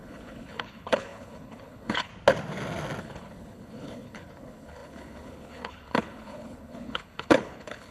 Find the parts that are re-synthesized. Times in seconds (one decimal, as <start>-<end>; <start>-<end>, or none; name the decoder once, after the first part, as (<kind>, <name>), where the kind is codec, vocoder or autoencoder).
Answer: 0.0-2.1 (codec, HILCodec); 3.0-7.9